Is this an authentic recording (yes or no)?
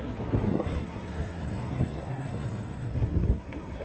no